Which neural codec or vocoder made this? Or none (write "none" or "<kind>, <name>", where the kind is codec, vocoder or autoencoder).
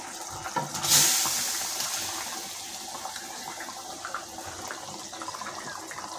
none